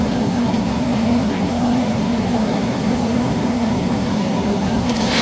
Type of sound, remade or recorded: remade